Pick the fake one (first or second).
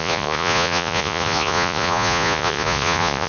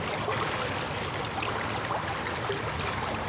first